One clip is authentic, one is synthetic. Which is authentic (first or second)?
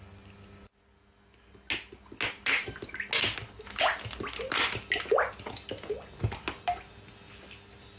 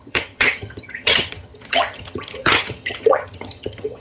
first